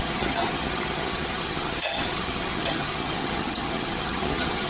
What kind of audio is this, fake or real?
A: fake